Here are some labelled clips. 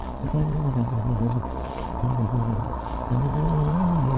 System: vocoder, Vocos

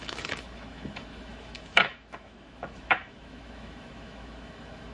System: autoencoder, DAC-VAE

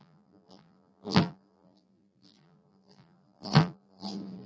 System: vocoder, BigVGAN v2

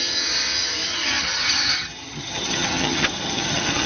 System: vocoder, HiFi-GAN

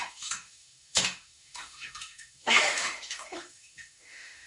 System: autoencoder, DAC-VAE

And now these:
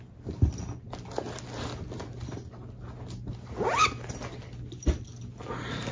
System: none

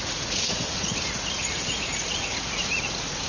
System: vocoder, Vocos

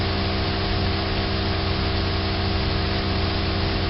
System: none